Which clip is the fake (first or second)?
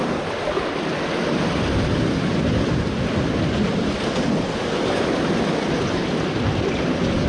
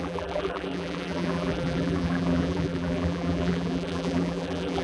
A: second